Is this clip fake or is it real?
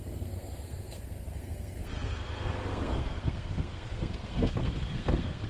fake